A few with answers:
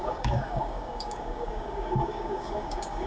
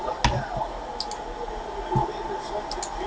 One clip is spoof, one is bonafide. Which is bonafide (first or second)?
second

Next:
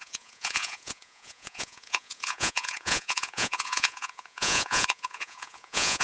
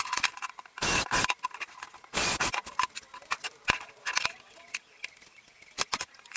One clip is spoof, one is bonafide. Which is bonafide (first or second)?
second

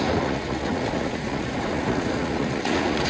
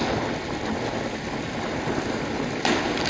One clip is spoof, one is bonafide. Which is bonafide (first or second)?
second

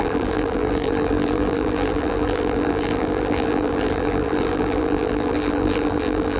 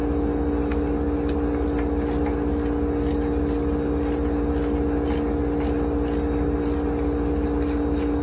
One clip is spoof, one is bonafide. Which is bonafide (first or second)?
second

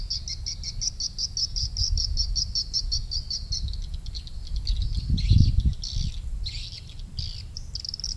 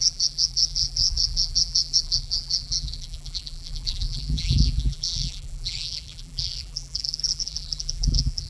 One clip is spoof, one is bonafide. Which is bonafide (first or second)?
first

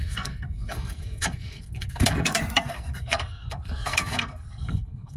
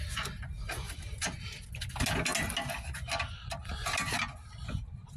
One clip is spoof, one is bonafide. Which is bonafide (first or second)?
second